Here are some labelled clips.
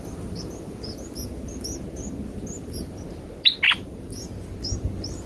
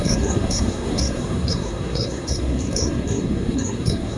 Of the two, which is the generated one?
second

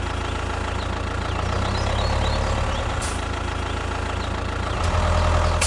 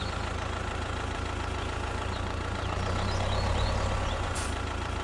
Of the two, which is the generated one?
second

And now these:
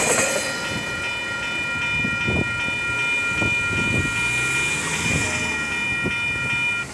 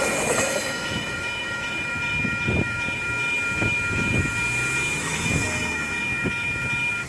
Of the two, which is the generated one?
second